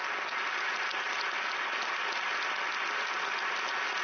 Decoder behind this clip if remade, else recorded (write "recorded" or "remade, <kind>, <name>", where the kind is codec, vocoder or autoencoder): recorded